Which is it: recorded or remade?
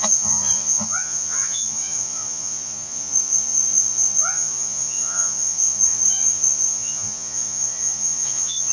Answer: remade